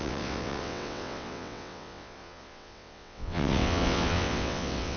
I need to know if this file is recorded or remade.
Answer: remade